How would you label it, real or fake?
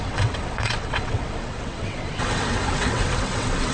fake